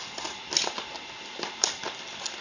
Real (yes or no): yes